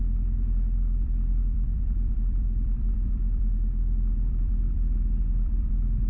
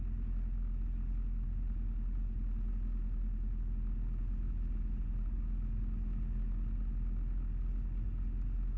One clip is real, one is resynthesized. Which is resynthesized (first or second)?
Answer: first